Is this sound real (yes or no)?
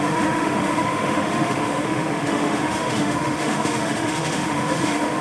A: no